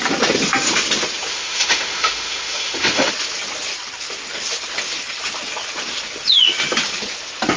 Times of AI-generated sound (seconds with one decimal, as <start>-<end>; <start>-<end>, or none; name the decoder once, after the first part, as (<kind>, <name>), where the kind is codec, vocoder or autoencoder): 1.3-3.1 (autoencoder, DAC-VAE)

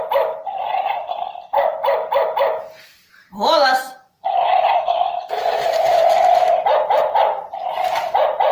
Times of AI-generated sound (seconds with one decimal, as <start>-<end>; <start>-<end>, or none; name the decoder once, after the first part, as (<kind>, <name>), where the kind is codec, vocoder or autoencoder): 3.2-6.0 (autoencoder, DAC-VAE)

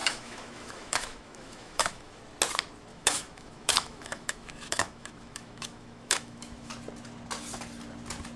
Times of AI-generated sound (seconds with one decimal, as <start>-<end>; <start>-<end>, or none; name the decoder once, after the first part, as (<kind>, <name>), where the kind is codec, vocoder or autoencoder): 0.0-2.2 (autoencoder, DAC-VAE); 2.9-6.7